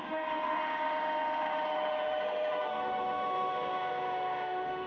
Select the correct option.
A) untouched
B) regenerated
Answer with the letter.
B